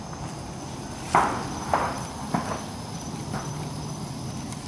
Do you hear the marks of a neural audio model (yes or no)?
no